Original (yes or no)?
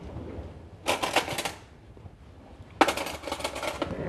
yes